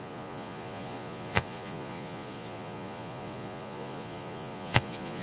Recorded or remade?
remade